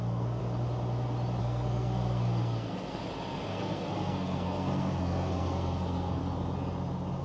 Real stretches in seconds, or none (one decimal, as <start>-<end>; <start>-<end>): 0.4-1.4; 3.0-3.5; 6.2-7.2